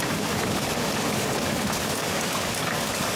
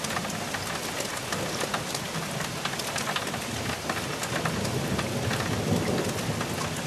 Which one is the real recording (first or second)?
second